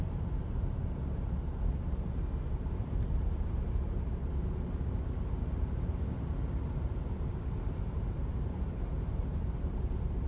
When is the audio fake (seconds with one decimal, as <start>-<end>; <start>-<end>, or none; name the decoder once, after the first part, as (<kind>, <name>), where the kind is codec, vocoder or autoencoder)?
0.0-0.5 (vocoder, BigVGAN v2); 3.3-4.2; 8.3-10.3